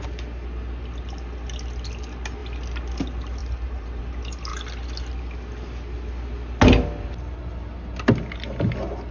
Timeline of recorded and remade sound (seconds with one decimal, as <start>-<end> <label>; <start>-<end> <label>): 0.0-3.4 recorded; 3.4-4.0 remade; 4.0-9.1 recorded